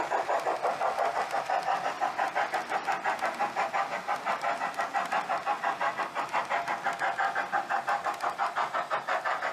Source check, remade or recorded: recorded